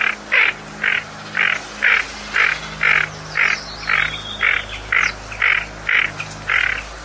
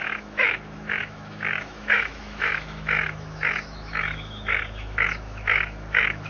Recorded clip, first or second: first